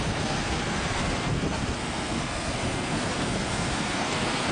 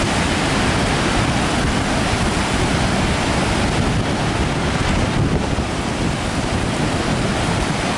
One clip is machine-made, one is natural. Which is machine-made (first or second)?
first